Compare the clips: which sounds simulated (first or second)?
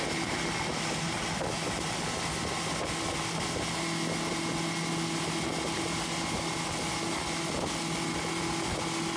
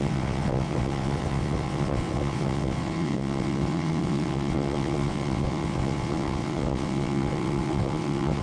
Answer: second